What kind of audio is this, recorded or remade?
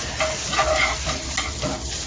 recorded